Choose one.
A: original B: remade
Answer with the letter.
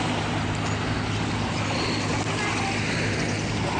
A